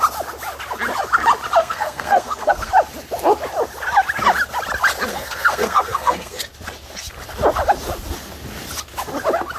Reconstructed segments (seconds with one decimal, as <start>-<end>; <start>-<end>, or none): 1.6-2.7; 5.1-6.4